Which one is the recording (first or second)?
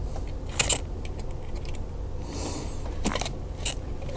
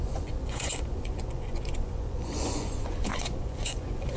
first